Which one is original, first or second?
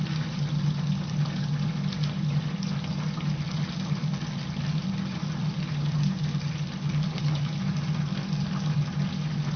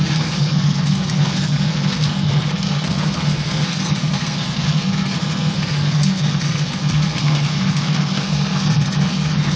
first